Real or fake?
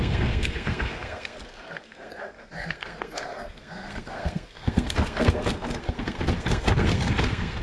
fake